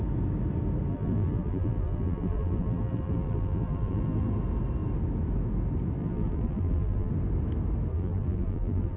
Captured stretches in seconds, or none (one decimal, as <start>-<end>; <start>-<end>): 0.0-0.9; 4.3-6.0; 7.1-7.9